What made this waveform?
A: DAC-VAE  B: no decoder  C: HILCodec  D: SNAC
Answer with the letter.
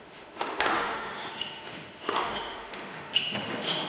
A